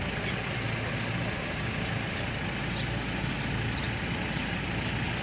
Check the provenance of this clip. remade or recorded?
recorded